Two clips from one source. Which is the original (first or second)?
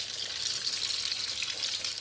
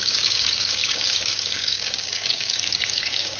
first